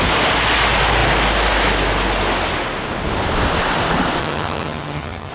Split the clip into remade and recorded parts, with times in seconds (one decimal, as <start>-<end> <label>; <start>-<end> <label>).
0.0-4.2 recorded; 4.2-5.3 remade